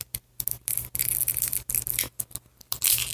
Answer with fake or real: real